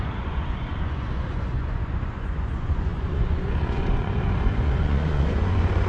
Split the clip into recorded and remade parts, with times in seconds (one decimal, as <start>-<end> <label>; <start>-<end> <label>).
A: 0.0-5.9 remade